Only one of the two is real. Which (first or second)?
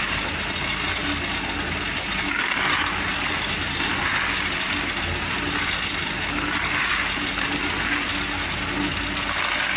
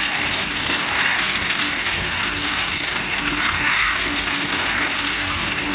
first